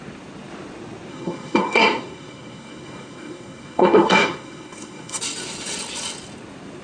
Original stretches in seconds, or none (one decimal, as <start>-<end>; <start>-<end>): 0.0-1.1; 5.2-6.8